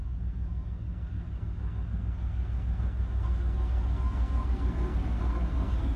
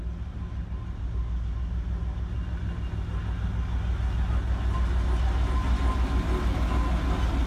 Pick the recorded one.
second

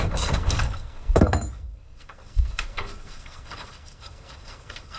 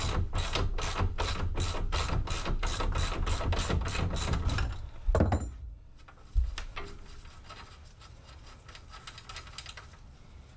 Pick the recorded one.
second